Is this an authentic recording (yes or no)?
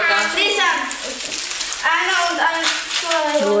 yes